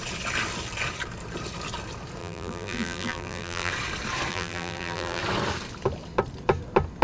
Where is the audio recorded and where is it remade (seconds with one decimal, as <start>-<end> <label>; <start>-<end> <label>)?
0.0-2.2 recorded; 2.2-3.7 remade; 3.7-4.3 recorded; 4.3-5.2 remade; 5.2-7.0 recorded